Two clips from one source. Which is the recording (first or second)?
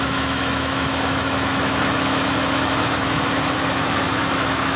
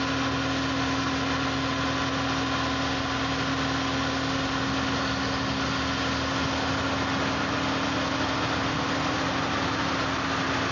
second